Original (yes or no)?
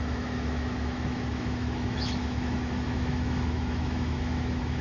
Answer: no